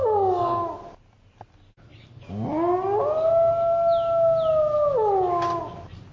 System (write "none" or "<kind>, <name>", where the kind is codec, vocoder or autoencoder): none